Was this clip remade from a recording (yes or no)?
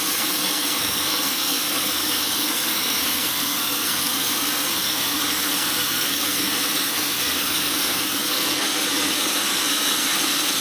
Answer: yes